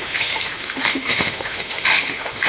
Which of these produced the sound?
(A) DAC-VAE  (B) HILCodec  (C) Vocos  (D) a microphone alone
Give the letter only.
A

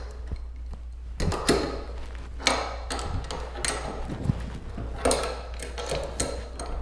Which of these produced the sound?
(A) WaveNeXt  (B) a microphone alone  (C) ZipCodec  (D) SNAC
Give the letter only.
B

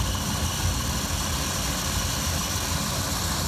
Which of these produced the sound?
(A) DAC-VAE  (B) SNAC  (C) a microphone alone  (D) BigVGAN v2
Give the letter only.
C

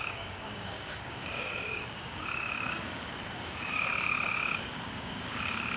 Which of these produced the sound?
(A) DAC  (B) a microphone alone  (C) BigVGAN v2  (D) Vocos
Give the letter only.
A